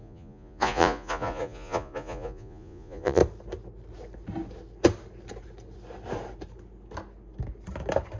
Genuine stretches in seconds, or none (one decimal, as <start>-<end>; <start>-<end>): 3.2-8.2